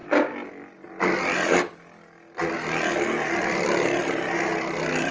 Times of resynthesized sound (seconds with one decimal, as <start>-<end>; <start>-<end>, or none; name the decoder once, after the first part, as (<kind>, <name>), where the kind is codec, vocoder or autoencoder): none